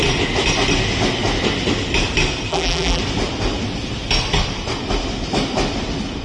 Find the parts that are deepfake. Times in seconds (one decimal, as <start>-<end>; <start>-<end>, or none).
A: 2.5-3.0